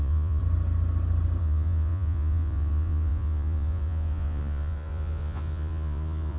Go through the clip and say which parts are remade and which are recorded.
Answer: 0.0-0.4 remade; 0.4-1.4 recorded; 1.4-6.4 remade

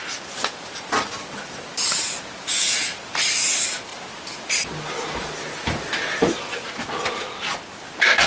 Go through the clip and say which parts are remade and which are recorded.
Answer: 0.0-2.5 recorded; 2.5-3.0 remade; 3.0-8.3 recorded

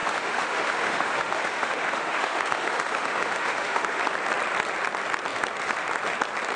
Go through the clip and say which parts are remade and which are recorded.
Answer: 0.0-4.0 remade; 4.0-6.6 recorded

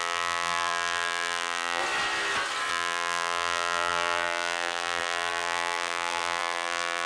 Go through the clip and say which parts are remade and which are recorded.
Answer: 0.0-1.8 remade; 1.8-2.7 recorded; 2.7-7.1 remade

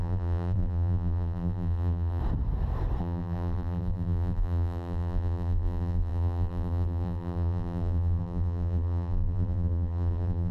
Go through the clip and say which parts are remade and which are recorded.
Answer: 0.0-2.2 remade; 2.2-3.0 recorded; 3.0-10.5 remade

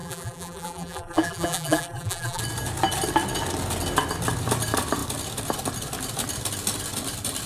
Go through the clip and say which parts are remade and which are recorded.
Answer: 0.0-2.4 remade; 2.4-7.5 recorded